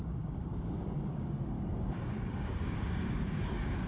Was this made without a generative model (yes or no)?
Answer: no